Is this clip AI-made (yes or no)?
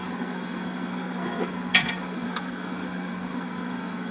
yes